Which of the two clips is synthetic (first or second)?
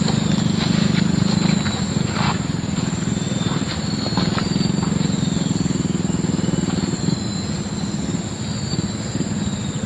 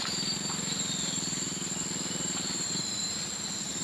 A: second